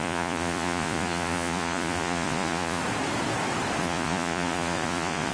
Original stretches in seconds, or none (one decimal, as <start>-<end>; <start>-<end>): 2.8-3.8